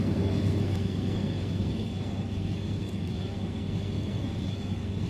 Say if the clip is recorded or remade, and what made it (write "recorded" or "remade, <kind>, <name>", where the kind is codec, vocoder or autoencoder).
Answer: remade, codec, SNAC